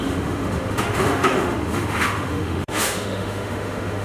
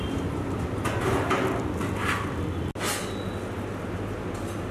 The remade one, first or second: first